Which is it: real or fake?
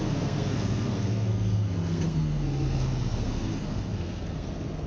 fake